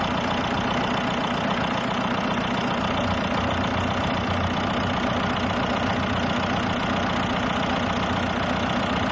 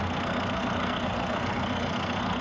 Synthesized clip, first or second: second